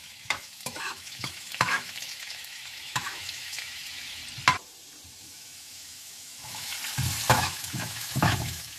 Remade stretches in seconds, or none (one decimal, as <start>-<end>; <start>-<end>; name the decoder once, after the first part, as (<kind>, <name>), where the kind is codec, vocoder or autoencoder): 0.0-4.2 (autoencoder, DAC-VAE); 5.2-6.7; 7.3-8.8